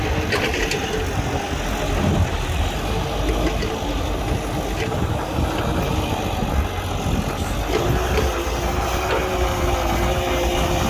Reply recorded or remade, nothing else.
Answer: recorded